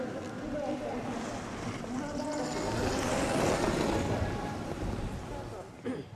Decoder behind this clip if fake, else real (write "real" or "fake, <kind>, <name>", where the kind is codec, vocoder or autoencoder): real